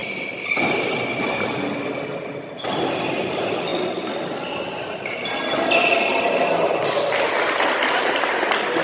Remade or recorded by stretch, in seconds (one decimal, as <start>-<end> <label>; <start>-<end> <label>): 0.0-8.8 recorded